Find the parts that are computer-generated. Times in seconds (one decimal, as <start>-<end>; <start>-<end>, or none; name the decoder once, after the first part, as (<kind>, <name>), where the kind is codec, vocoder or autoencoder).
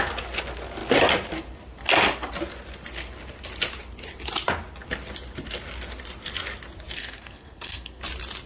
7.0-8.0 (codec, SNAC)